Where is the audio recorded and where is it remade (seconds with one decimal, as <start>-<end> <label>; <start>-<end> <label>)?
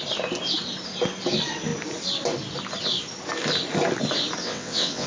0.0-4.4 recorded; 4.4-5.1 remade